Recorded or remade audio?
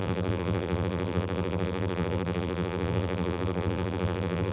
remade